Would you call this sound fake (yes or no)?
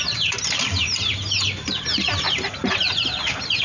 no